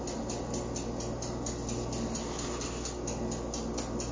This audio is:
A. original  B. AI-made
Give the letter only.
A